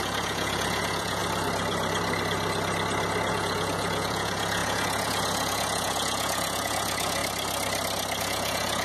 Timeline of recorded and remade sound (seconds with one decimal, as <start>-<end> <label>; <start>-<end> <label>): 0.0-1.2 remade; 1.2-3.3 recorded; 3.3-7.2 remade; 7.2-8.2 recorded; 8.2-8.8 remade